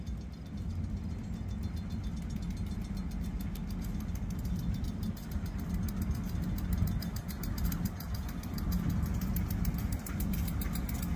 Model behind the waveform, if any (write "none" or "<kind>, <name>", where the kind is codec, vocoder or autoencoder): none